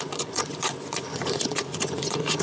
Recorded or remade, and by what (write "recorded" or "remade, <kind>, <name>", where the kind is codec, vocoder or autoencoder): remade, vocoder, Vocos